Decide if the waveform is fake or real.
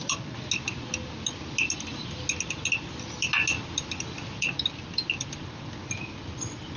real